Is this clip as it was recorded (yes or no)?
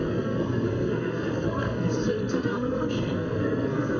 no